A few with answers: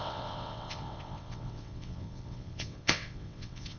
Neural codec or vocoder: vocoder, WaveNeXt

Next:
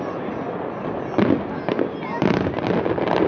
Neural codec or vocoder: none